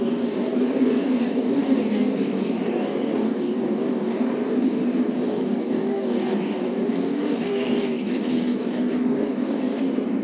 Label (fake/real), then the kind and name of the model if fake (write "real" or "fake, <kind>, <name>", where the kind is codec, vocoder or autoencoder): fake, codec, DAC